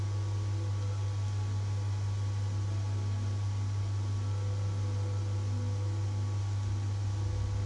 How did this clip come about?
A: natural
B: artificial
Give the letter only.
A